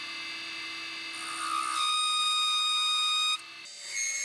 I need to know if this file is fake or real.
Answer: real